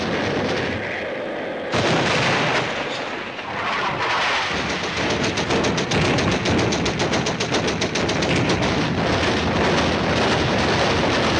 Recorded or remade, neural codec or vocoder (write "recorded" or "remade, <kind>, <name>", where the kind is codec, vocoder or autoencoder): recorded